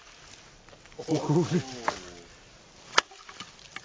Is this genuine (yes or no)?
yes